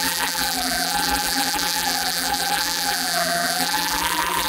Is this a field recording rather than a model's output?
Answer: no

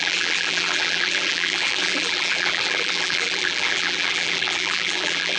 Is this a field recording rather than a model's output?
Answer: no